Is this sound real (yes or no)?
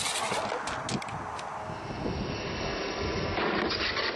yes